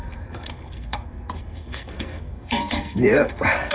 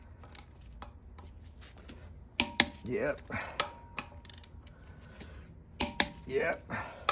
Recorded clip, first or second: second